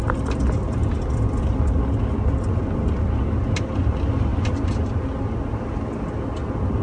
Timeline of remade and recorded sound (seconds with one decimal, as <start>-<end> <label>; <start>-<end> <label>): 0.0-4.3 recorded; 4.3-5.0 remade; 5.0-6.8 recorded